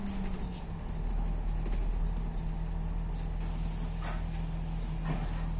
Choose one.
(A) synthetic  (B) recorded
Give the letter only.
B